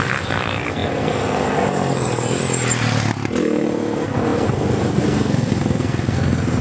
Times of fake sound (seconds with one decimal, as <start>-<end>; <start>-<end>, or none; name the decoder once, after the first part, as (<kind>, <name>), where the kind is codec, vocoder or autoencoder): 0.0-2.4 (codec, SNAC); 3.4-6.6